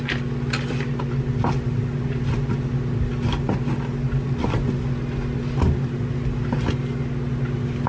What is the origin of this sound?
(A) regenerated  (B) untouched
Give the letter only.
B